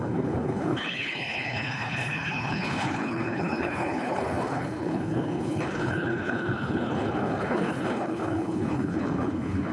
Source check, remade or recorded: remade